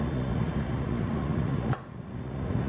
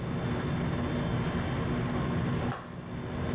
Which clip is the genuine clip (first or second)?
second